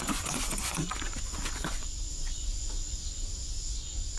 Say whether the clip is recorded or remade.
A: remade